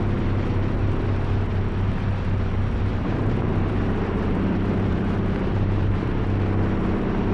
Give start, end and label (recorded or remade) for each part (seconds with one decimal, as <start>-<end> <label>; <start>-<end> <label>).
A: 0.0-2.9 recorded; 2.9-6.2 remade; 6.2-7.3 recorded